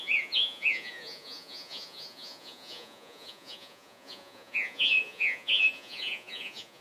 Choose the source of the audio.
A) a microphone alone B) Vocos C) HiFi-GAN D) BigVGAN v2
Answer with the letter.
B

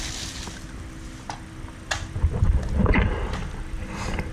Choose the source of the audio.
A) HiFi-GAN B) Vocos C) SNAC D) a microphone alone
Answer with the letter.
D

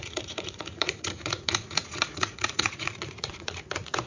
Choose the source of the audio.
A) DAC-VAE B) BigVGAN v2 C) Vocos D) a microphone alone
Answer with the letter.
C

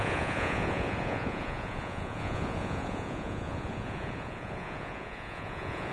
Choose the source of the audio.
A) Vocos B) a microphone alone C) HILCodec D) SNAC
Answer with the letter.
A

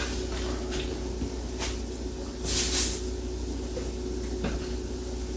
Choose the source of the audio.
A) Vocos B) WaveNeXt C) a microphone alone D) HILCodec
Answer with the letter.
C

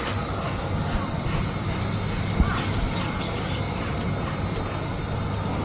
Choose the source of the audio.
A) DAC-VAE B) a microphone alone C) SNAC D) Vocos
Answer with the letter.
B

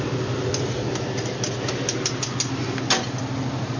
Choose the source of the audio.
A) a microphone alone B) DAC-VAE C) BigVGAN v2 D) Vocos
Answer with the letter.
A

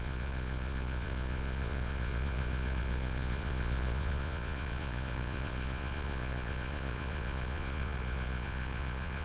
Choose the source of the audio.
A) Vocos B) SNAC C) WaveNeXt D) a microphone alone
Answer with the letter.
A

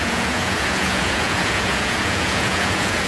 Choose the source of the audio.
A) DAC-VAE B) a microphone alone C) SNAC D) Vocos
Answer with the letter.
D